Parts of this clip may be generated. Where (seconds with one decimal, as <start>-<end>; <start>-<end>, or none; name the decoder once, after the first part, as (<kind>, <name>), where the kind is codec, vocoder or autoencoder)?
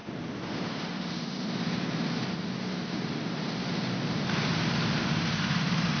0.0-4.5 (vocoder, BigVGAN v2); 5.0-6.0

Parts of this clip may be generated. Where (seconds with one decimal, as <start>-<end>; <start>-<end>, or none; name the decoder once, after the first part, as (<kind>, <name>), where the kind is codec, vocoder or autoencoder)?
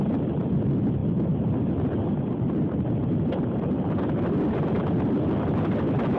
none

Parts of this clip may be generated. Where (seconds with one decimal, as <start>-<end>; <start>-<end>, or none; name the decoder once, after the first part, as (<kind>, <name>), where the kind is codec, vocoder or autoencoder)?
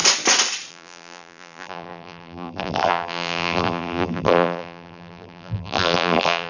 0.7-6.5 (vocoder, BigVGAN v2)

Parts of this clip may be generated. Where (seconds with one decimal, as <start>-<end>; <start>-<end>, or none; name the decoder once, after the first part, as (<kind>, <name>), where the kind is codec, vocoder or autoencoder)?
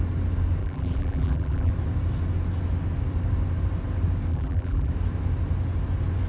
0.6-1.7 (vocoder, BigVGAN v2); 4.3-4.9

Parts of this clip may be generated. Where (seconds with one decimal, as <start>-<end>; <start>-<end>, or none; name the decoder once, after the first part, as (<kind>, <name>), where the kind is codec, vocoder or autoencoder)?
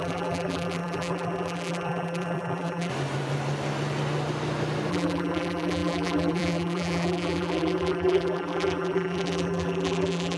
0.0-2.9 (vocoder, BigVGAN v2); 4.9-10.4